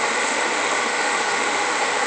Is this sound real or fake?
fake